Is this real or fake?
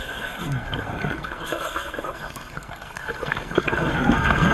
fake